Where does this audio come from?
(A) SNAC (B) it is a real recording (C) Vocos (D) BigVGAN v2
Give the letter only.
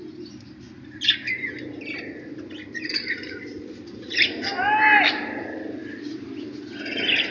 B